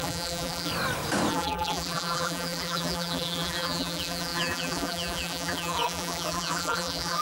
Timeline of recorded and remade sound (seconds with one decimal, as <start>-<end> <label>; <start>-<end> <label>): 0.0-0.7 remade; 0.7-1.3 recorded; 1.3-7.2 remade